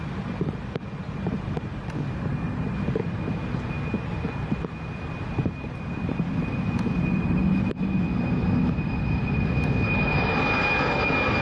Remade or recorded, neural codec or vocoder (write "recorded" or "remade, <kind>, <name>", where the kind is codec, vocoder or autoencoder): recorded